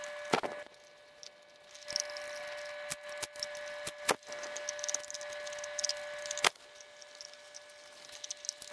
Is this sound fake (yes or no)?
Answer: no